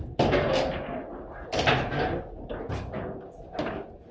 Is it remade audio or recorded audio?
recorded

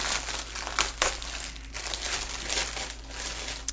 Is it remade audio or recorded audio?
recorded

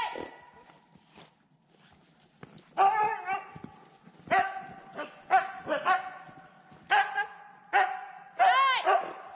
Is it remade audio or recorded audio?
recorded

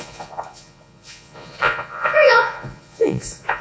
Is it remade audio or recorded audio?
remade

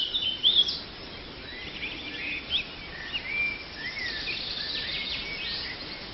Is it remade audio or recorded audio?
recorded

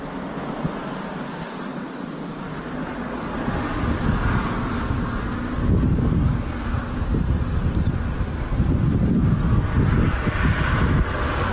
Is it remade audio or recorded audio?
recorded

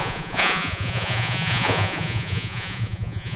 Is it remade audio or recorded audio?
remade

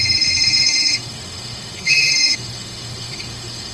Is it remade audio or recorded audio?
remade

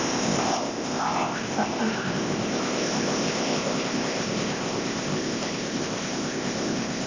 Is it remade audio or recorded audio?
remade